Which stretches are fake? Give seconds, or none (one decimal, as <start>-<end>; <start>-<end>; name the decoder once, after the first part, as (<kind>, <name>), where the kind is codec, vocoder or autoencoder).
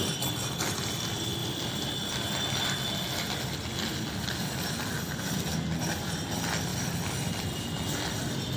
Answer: none